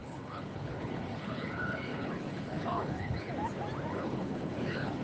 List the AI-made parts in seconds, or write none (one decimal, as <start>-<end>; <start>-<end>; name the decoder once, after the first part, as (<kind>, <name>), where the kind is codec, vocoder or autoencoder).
0.0-3.3 (codec, HILCodec); 3.9-5.0